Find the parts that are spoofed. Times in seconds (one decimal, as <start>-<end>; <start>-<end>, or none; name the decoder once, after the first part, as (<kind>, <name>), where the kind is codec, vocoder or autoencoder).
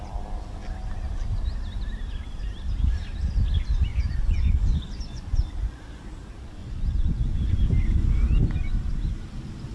3.9-6.0 (vocoder, Vocos); 6.6-7.6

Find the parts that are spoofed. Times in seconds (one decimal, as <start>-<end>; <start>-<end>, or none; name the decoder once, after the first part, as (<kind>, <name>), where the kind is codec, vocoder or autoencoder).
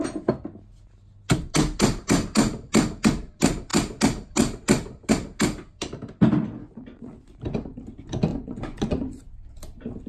8.3-9.2 (vocoder, Vocos)